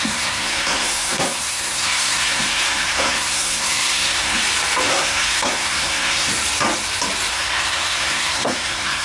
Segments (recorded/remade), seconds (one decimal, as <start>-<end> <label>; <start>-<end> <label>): 0.0-4.4 remade; 4.4-4.9 recorded; 4.9-6.3 remade; 6.3-7.3 recorded; 7.3-9.0 remade